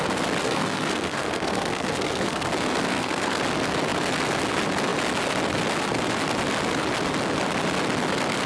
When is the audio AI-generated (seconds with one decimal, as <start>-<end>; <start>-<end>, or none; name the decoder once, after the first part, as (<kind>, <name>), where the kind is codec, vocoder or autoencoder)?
0.4-2.5 (codec, SNAC); 2.9-3.4